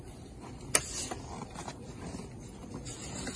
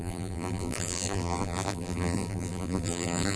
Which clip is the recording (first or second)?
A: first